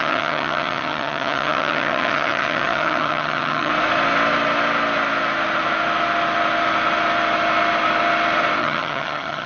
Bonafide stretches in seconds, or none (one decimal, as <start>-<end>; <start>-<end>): 3.7-8.6